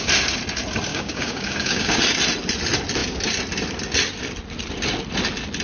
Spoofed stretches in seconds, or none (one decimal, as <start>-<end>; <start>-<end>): 0.9-2.0